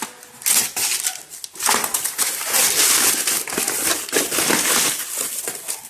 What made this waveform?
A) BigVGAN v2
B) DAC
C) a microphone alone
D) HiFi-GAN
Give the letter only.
C